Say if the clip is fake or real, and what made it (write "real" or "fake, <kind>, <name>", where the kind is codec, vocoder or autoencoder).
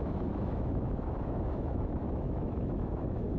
fake, autoencoder, DAC-VAE